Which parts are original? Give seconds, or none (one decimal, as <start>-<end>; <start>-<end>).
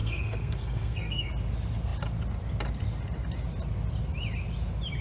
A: 1.3-5.0